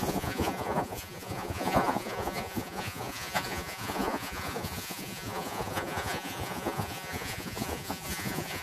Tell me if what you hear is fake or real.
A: fake